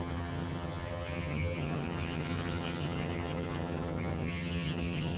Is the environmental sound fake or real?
fake